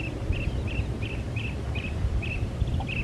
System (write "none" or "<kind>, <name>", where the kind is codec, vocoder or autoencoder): none